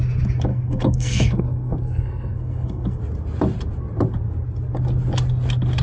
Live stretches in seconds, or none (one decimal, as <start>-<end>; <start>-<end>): 0.0-0.5; 3.0-5.8